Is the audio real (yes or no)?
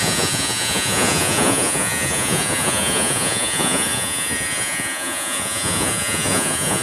no